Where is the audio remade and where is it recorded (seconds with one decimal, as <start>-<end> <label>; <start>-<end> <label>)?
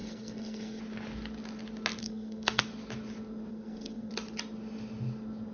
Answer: 0.0-0.8 remade; 0.8-2.0 recorded; 2.0-2.6 remade; 2.6-3.5 recorded; 3.5-4.1 remade; 4.1-5.5 recorded